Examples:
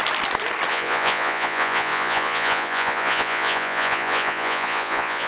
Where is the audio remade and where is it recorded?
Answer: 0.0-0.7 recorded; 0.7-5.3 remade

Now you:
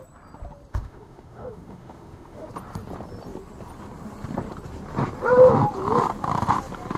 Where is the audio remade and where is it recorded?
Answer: 0.0-0.7 recorded; 0.7-2.5 remade; 2.5-7.0 recorded

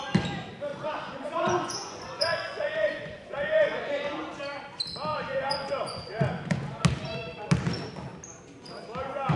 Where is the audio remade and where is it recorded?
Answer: 0.0-0.7 recorded; 0.7-3.9 remade; 3.9-5.1 recorded; 5.1-6.8 remade; 6.8-9.4 recorded

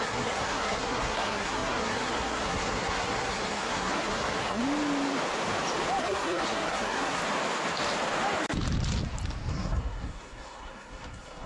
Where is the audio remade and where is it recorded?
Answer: 0.0-4.6 remade; 4.6-6.0 recorded; 6.0-7.2 remade; 7.2-9.5 recorded; 9.5-11.5 remade

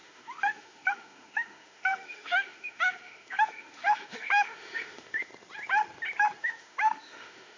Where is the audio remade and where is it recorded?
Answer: 0.0-5.3 remade; 5.3-6.4 recorded; 6.4-7.6 remade